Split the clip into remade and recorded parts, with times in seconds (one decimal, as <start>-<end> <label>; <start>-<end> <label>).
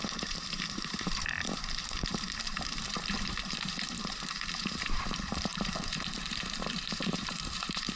0.0-8.0 remade